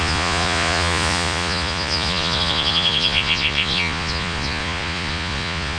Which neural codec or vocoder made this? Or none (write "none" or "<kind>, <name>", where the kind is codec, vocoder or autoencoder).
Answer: vocoder, Vocos